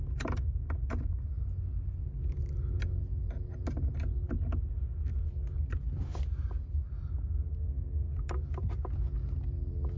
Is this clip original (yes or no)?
yes